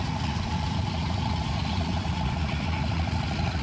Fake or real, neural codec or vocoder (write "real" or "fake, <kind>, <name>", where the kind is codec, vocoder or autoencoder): fake, vocoder, Vocos